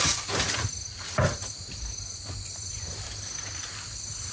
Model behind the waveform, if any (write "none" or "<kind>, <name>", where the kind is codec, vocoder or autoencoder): none